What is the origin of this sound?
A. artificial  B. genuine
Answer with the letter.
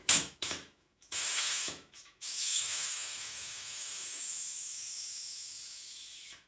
A